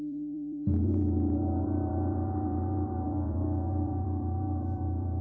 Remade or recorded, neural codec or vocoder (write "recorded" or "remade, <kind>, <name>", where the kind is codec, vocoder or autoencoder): remade, vocoder, BigVGAN v2